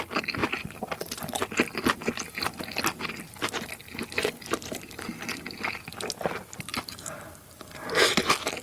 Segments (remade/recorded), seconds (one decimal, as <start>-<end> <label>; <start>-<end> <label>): 0.0-0.4 recorded; 0.4-1.4 remade; 1.4-6.7 recorded; 6.7-8.2 remade; 8.2-8.6 recorded